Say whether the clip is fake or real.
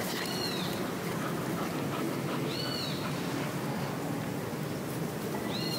real